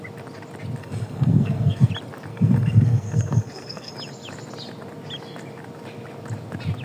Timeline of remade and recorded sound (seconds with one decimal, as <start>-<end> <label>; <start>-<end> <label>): 0.0-0.8 recorded; 0.8-1.9 remade; 1.9-2.3 recorded; 2.3-3.9 remade; 3.9-6.8 recorded